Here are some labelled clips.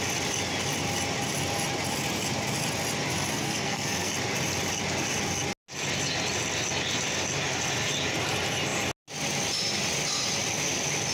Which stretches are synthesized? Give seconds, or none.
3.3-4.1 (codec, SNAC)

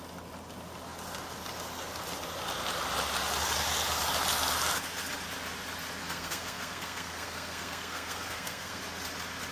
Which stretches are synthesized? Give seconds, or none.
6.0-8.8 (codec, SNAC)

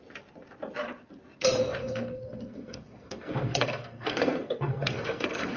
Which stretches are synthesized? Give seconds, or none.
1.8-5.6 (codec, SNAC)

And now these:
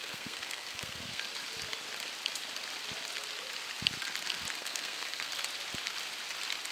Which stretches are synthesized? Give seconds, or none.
0.0-1.2 (codec, SNAC); 4.6-5.3

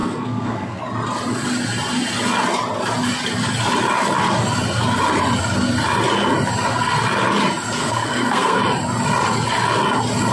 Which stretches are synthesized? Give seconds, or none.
0.0-0.8 (codec, SNAC); 7.8-8.6